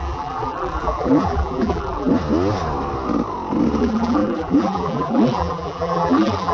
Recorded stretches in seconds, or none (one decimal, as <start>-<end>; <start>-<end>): 2.1-3.8